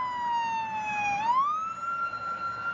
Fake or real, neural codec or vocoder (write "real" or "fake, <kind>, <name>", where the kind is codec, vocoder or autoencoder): real